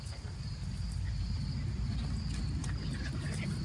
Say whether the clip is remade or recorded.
recorded